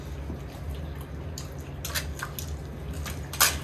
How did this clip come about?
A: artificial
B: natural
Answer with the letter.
B